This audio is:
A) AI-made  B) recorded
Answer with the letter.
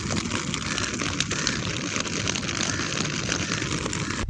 B